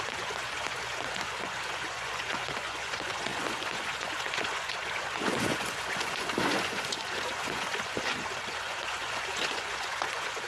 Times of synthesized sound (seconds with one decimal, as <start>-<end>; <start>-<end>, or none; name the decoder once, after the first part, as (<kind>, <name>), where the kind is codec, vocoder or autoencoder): 0.0-10.5 (vocoder, Vocos)